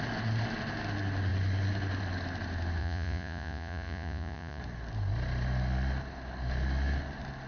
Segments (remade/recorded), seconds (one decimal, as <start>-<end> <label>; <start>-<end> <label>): 0.0-2.8 recorded; 2.8-4.6 remade; 4.6-7.5 recorded

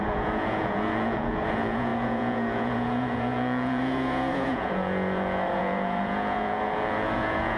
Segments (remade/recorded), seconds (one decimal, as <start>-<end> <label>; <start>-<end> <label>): 0.0-7.6 remade

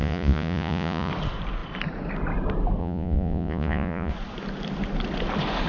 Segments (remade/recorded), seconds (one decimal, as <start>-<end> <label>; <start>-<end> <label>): 0.0-1.1 remade; 1.1-2.8 recorded; 2.8-4.1 remade; 4.1-5.7 recorded